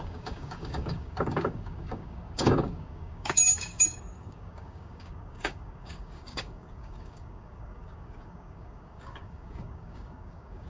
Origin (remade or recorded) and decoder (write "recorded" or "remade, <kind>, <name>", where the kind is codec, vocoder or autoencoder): remade, codec, DAC